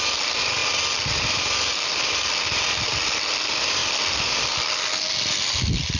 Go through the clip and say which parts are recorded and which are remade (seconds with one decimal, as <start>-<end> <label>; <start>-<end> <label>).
0.0-6.0 recorded